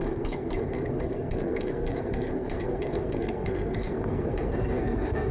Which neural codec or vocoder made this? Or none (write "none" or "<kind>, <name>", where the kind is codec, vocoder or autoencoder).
codec, SNAC